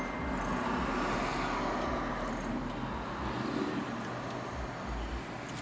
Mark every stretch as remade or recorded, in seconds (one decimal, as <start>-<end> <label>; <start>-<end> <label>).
0.0-5.6 recorded